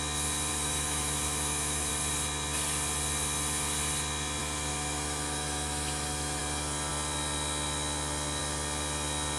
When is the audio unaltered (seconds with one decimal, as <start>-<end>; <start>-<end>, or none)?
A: 0.0-0.5; 1.9-4.4; 6.4-9.4